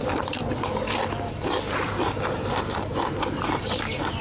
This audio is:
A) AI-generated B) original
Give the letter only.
B